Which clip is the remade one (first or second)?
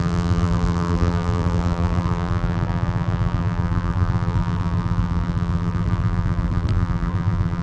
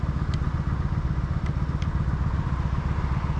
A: first